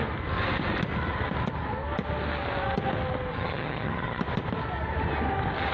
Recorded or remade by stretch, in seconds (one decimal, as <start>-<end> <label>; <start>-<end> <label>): 0.0-3.3 recorded; 3.3-4.2 remade; 4.2-5.7 recorded